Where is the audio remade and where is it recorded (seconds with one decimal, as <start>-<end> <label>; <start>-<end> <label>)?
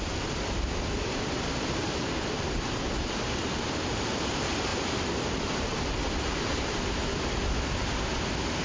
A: 0.0-8.6 recorded